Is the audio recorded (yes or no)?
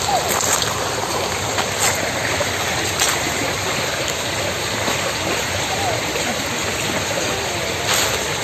yes